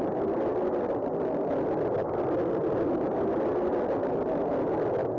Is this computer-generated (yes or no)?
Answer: no